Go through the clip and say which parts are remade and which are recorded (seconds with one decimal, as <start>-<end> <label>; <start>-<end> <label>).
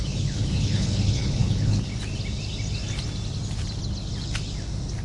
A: 0.0-1.9 remade; 1.9-5.0 recorded